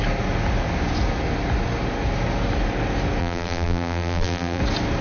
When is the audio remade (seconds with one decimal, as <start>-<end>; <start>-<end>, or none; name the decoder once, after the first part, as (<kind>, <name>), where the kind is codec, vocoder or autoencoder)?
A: 3.2-4.6 (vocoder, BigVGAN v2)